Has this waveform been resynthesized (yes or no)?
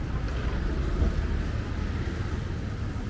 no